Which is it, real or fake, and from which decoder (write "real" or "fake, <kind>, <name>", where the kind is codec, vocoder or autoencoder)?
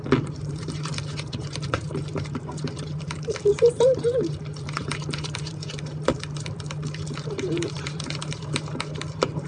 fake, vocoder, BigVGAN v2